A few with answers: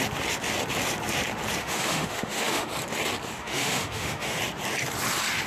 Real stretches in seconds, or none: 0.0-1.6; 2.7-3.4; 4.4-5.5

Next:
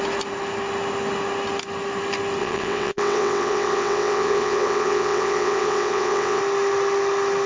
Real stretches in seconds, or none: 0.0-2.4; 6.4-7.5

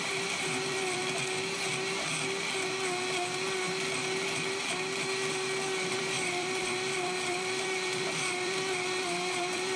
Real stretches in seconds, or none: 1.0-5.9